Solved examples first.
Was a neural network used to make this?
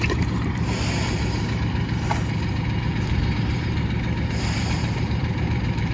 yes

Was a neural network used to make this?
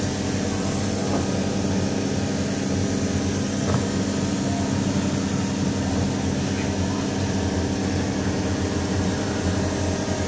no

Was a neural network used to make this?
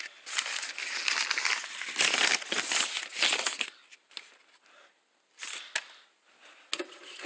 no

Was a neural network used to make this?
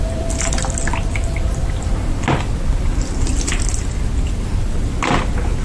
no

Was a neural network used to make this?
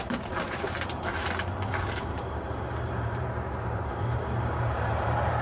yes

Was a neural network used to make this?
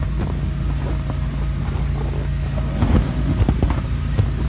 no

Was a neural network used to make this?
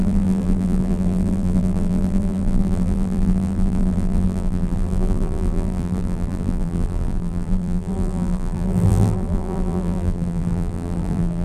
yes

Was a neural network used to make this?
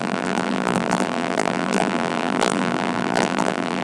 yes